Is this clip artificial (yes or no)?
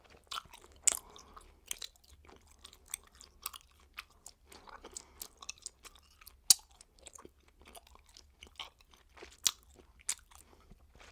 no